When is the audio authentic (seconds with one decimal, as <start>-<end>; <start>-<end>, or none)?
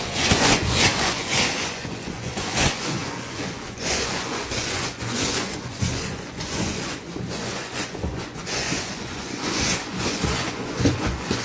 none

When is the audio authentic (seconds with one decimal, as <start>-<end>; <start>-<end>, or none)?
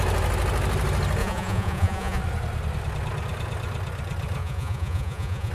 0.0-1.2; 2.2-4.4